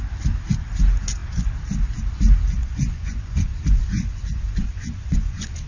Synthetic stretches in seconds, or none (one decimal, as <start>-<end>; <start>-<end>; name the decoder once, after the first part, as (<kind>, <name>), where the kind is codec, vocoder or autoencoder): 2.6-5.7 (vocoder, Vocos)